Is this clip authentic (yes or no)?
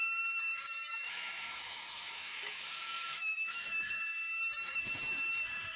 no